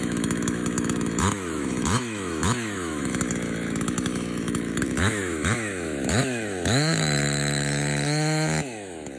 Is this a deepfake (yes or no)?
yes